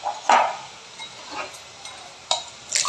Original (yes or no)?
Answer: yes